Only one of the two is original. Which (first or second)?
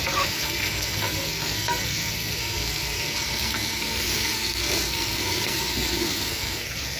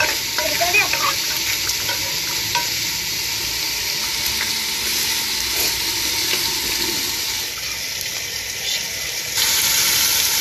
second